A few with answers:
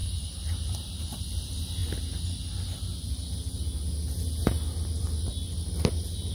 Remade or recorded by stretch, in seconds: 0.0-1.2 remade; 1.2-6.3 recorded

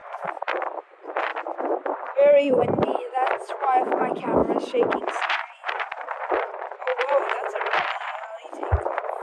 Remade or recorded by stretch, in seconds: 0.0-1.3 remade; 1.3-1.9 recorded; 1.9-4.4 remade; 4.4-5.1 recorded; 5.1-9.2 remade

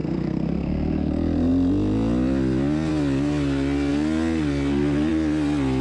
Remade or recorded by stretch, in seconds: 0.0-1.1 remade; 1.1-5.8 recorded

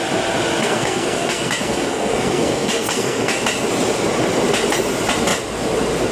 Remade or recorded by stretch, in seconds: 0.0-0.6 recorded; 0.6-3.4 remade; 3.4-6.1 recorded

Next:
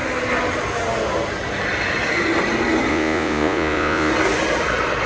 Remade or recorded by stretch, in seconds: 0.0-2.9 recorded; 2.9-4.1 remade; 4.1-5.1 recorded